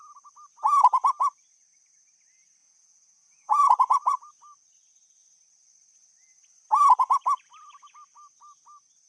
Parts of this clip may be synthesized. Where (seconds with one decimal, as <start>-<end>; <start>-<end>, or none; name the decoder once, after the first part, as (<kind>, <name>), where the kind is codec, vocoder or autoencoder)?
2.6-4.3 (vocoder, Vocos)